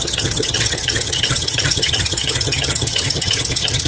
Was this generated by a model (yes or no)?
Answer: yes